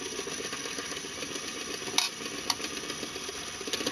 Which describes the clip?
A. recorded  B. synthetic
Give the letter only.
A